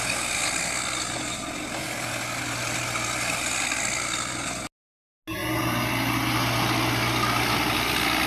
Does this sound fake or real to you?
real